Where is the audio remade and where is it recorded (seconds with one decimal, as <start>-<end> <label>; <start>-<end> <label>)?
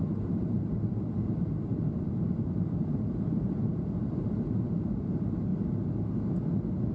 0.0-5.5 remade; 5.5-6.9 recorded